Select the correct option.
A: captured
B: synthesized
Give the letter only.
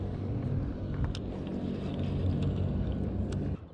A